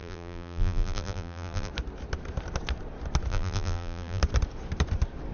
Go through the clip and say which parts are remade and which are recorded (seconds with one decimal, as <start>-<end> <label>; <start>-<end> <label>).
0.0-1.7 remade; 1.7-3.3 recorded; 3.3-4.2 remade; 4.2-5.3 recorded

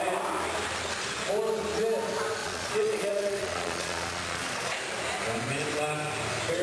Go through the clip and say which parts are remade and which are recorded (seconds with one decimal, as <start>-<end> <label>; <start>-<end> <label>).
0.0-2.4 recorded; 2.4-4.8 remade; 4.8-6.6 recorded

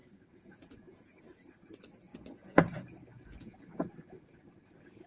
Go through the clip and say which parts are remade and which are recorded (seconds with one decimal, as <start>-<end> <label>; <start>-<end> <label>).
0.0-1.2 remade; 1.2-2.1 recorded; 2.1-4.4 remade; 4.4-5.1 recorded

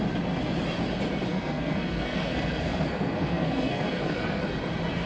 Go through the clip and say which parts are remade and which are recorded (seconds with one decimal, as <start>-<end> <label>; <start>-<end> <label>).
0.0-1.3 recorded; 1.3-4.4 remade; 4.4-5.1 recorded